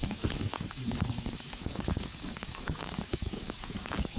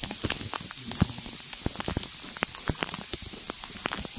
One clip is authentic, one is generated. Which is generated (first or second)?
first